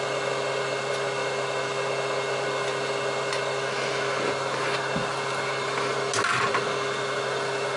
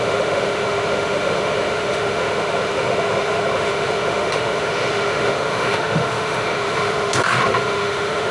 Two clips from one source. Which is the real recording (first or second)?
first